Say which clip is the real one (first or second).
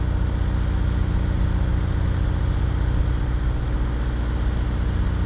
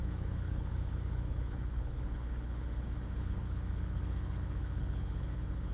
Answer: first